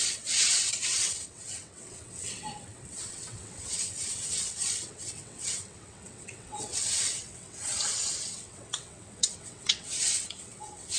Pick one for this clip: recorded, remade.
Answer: remade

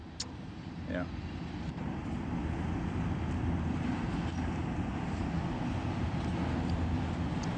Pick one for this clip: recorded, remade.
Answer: recorded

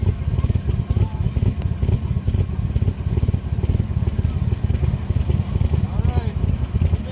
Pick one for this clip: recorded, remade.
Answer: recorded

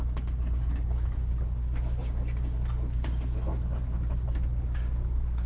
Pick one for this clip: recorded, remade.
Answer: recorded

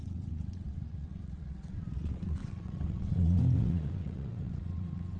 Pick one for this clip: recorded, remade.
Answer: remade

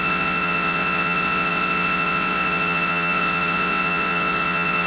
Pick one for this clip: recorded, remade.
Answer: remade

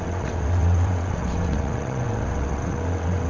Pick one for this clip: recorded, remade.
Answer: remade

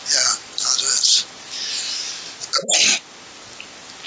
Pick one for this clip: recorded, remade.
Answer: recorded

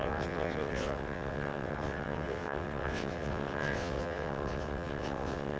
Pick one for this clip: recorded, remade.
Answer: remade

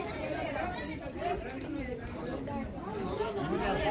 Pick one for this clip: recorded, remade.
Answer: recorded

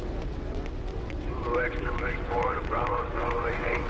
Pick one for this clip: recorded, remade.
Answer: remade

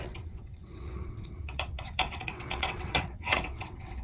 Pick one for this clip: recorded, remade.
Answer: remade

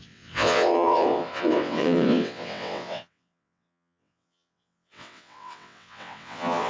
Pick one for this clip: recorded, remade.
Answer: remade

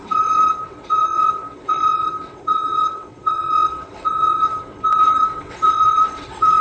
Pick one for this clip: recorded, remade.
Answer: remade